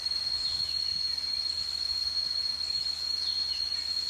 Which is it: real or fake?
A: real